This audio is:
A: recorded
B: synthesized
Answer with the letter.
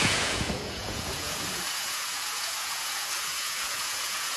B